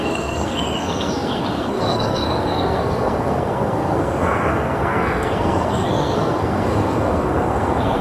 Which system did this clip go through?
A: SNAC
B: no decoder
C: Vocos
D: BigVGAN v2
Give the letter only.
A